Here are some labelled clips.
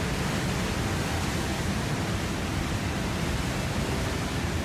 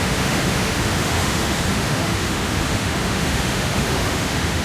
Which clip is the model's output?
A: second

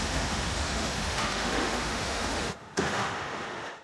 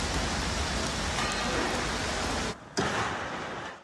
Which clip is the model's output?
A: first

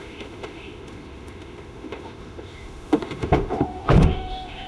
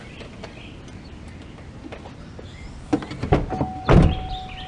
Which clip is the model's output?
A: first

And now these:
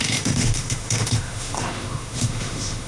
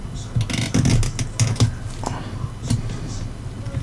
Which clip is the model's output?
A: first